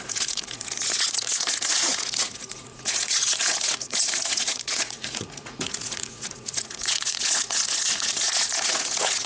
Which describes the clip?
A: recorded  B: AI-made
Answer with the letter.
B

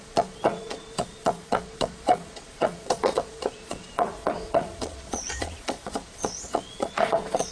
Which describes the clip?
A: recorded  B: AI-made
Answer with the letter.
B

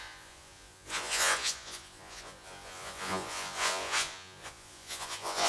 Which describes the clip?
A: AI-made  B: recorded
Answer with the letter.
A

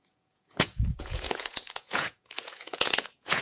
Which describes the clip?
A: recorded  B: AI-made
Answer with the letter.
B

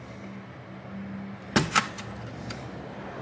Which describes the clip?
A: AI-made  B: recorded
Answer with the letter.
B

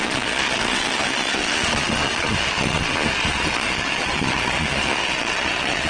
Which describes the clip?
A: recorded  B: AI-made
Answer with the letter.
B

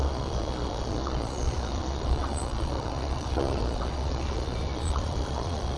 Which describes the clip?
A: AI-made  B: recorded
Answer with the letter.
A